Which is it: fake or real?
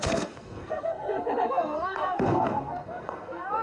fake